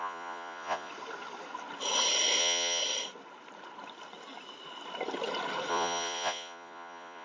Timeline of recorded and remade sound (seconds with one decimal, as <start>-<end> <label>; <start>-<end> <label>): 0.0-0.9 remade; 0.9-2.4 recorded; 2.4-2.8 remade; 2.8-5.7 recorded; 5.7-7.2 remade